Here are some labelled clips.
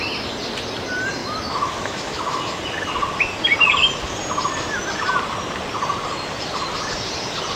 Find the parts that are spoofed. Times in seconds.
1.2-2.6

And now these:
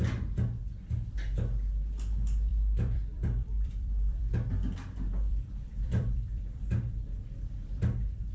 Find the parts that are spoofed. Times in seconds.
2.5-4.3; 5.3-6.6

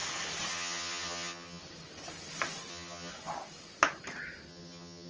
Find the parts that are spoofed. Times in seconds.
0.5-1.6; 2.7-3.1; 4.5-5.1

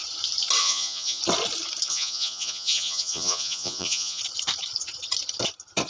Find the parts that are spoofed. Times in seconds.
0.6-1.2; 1.9-4.2